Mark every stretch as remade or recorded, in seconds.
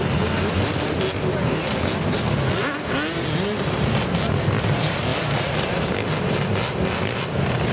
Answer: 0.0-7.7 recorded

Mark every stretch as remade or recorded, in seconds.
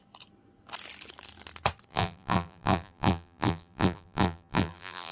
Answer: 0.0-1.9 recorded; 1.9-5.1 remade